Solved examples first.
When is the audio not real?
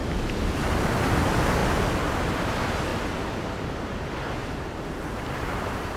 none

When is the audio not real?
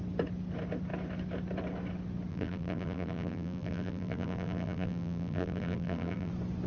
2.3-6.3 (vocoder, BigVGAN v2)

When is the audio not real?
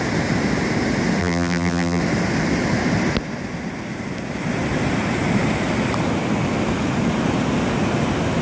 1.2-2.0 (vocoder, BigVGAN v2)